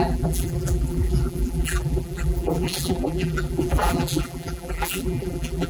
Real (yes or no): no